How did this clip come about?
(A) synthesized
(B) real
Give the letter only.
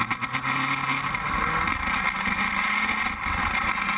B